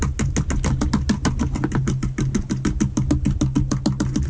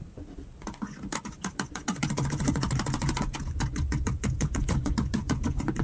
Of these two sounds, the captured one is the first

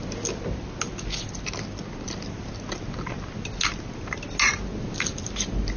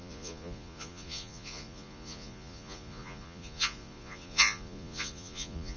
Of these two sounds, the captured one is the first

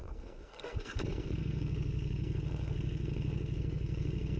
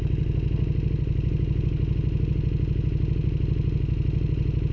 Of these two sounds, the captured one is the second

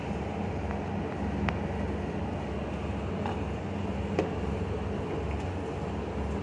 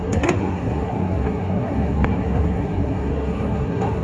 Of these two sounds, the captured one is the first